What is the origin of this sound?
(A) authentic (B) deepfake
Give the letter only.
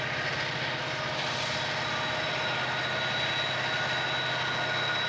A